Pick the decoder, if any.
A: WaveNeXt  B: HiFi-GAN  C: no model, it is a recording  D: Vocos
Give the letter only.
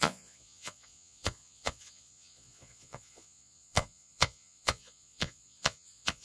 D